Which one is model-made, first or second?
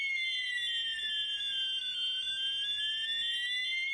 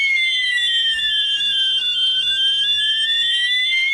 second